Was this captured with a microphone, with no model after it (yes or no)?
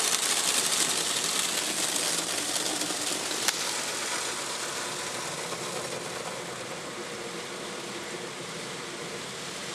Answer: yes